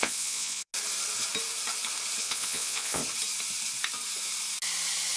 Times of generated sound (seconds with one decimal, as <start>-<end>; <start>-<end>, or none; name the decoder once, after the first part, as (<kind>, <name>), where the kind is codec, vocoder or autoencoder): 0.0-0.7 (vocoder, Vocos); 2.2-3.0